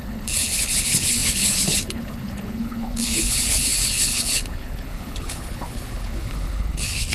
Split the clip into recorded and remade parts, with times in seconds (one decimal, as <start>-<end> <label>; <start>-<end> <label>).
0.0-7.1 remade